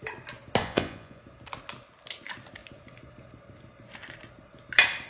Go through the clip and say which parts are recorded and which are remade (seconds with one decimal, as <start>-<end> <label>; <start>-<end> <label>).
0.0-0.6 recorded; 0.6-1.2 remade; 1.2-5.1 recorded